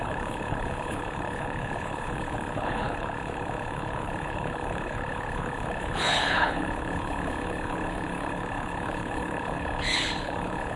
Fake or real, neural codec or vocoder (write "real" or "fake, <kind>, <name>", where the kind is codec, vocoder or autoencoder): fake, codec, HILCodec